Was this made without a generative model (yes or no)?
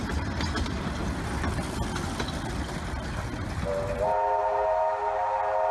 yes